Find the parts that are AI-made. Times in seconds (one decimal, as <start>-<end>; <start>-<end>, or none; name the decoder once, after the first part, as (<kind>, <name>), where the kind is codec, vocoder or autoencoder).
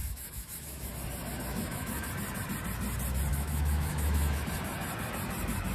0.0-0.9 (autoencoder, DAC-VAE); 1.5-2.1; 3.3-4.4